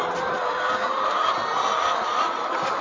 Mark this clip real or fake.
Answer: real